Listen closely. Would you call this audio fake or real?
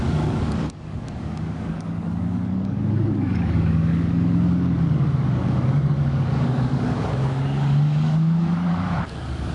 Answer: fake